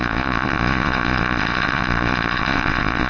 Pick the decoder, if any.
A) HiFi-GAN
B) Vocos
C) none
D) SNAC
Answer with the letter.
B